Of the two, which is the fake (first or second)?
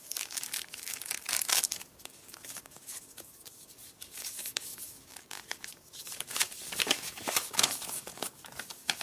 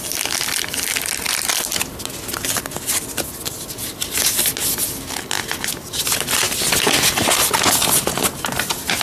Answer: first